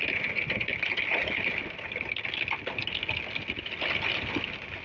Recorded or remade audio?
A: recorded